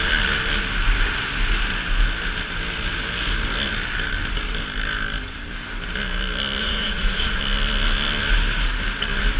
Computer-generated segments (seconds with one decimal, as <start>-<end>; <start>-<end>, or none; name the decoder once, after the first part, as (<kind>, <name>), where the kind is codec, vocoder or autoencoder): 6.6-7.4 (vocoder, Vocos)